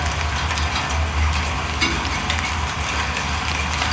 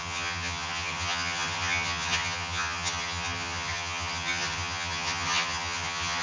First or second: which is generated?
second